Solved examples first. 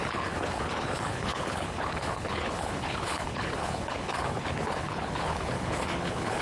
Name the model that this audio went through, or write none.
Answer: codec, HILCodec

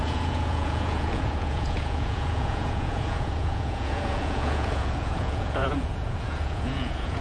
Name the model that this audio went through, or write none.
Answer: vocoder, Vocos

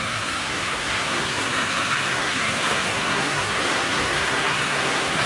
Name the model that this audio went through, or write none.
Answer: codec, SNAC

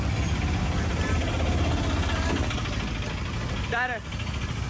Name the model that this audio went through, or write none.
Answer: none